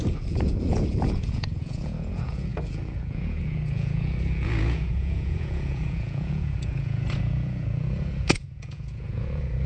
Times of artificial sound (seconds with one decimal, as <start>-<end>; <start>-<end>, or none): 0.0-9.7